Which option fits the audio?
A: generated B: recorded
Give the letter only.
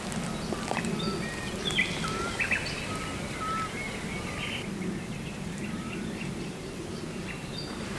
B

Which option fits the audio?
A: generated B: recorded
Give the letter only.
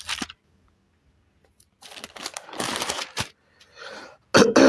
B